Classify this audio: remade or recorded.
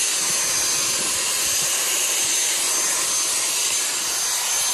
recorded